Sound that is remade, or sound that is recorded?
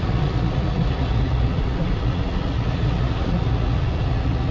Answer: remade